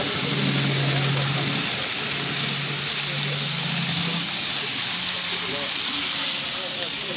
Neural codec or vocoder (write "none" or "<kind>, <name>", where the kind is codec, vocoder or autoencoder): none